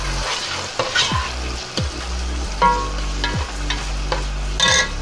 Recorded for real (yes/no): yes